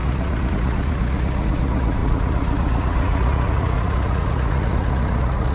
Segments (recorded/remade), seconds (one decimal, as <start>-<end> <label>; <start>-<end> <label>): 0.0-5.5 remade